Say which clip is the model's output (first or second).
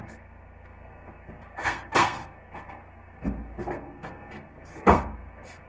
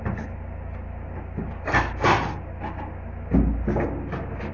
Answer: first